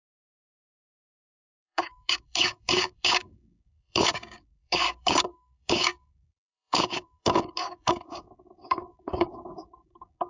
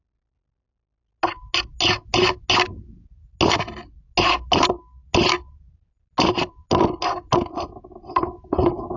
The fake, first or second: first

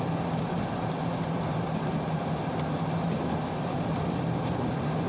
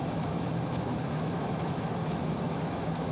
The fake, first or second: second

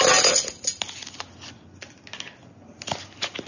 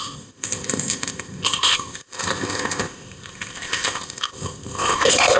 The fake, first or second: second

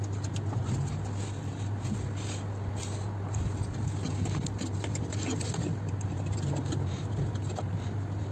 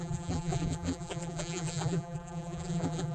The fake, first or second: second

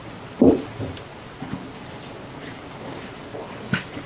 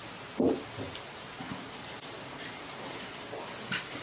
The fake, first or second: first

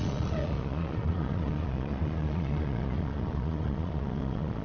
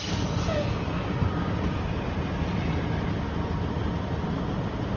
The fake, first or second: first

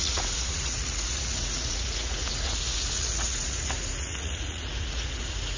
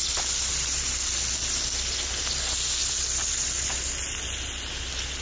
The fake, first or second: first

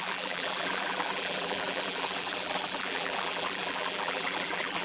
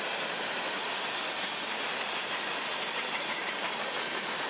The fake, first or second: first